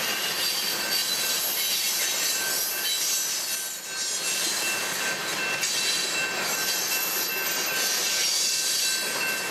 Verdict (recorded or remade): recorded